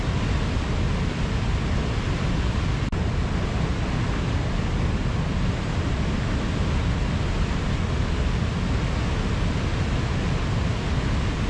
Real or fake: real